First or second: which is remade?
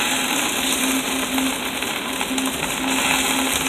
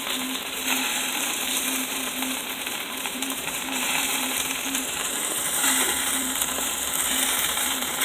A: second